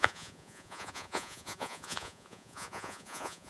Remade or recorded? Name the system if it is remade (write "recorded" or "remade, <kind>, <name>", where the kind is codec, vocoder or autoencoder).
remade, vocoder, Vocos